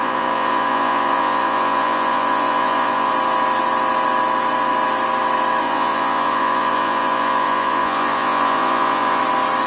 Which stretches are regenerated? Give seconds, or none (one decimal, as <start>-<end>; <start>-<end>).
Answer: 0.0-3.1; 5.6-9.2